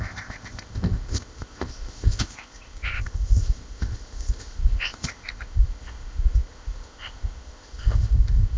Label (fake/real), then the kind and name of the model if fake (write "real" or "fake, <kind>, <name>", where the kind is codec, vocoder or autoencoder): fake, codec, ZipCodec